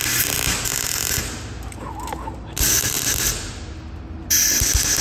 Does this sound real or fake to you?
real